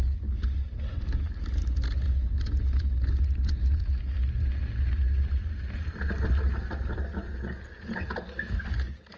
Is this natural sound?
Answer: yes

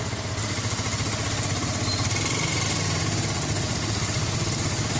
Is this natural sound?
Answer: yes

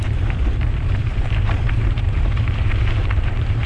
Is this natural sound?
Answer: no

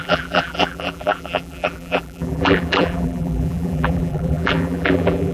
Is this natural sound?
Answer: no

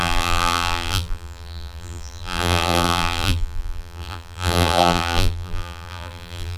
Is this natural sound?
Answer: no